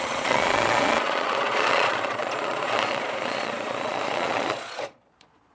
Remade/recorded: remade